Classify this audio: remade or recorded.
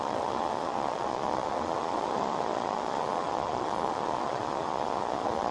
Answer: remade